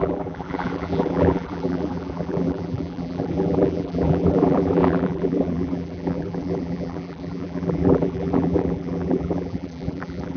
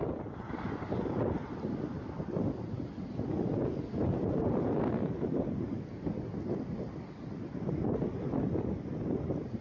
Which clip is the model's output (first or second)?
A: first